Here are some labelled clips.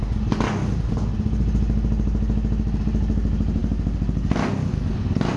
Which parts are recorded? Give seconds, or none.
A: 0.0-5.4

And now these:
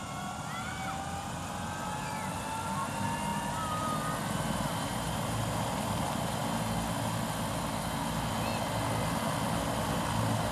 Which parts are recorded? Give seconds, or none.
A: 0.0-10.5

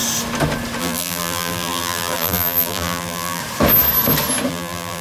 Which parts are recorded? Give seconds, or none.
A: 0.0-0.8; 3.4-4.5

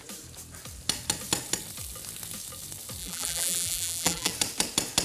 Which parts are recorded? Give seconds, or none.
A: 0.0-3.0; 4.3-5.0

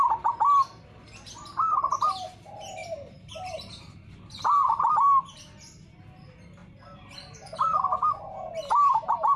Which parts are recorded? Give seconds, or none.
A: 0.0-2.8; 4.9-6.6; 7.8-9.4

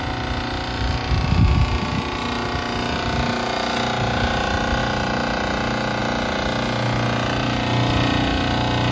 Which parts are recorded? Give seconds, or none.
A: 0.0-8.9

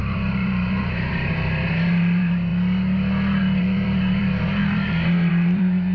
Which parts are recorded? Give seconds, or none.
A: 2.5-3.6

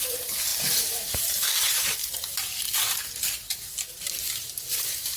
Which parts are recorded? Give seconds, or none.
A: 2.0-4.4